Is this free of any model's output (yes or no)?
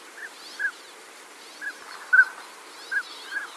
yes